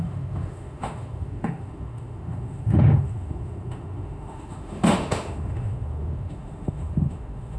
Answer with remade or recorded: remade